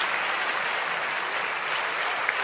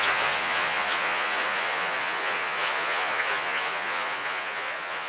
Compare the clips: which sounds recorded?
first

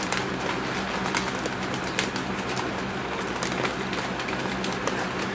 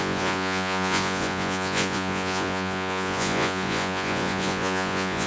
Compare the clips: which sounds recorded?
first